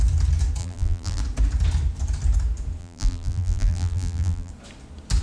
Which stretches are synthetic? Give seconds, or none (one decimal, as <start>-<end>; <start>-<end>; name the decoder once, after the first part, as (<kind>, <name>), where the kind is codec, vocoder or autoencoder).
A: 0.6-1.2 (vocoder, BigVGAN v2); 2.8-4.5